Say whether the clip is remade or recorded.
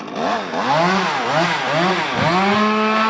recorded